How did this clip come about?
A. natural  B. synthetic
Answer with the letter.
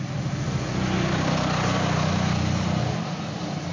A